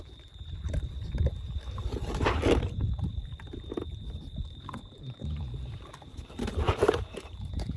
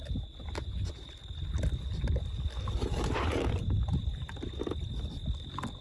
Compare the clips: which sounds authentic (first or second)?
second